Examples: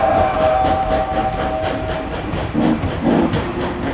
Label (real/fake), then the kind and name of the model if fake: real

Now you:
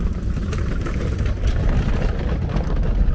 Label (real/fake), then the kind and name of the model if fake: real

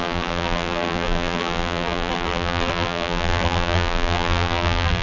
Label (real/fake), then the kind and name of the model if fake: fake, vocoder, BigVGAN v2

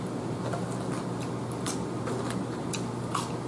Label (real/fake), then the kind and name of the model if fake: real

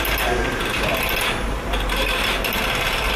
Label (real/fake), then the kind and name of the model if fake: real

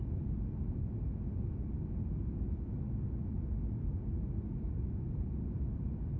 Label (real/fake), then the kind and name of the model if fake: real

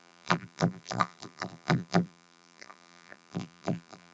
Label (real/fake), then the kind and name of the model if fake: fake, vocoder, BigVGAN v2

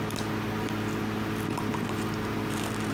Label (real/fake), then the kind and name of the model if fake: real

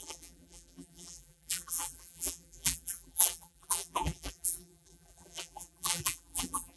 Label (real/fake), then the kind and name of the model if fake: fake, vocoder, BigVGAN v2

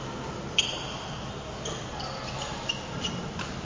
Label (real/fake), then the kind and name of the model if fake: real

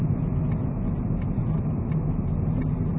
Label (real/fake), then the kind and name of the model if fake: real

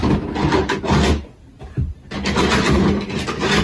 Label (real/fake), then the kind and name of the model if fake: real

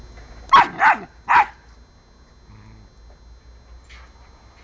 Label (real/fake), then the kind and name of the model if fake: real